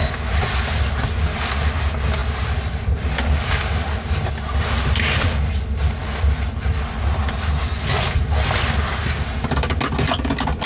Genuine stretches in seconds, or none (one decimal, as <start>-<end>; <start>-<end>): 0.0-10.7